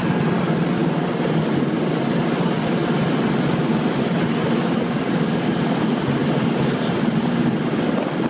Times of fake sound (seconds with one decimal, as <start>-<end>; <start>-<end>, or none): 6.2-8.3